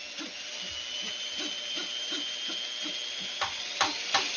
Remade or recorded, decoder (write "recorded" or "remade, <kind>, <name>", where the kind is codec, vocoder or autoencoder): recorded